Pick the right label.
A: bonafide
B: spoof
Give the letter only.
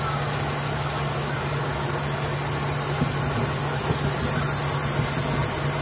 A